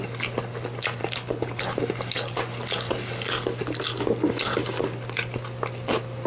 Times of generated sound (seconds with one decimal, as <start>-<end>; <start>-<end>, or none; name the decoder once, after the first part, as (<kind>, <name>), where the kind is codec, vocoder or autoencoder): 1.0-1.6 (codec, HILCodec)